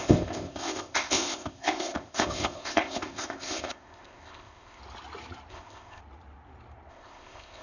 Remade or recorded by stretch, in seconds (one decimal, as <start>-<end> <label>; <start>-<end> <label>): 0.0-4.8 remade; 4.8-5.5 recorded; 5.5-6.0 remade; 6.0-6.9 recorded; 6.9-7.6 remade